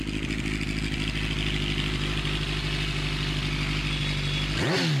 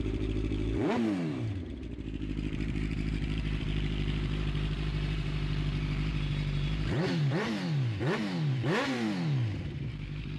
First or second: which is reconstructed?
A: second